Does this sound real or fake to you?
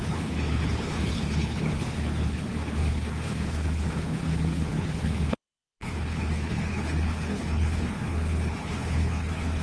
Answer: fake